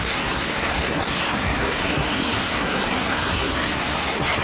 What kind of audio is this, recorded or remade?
remade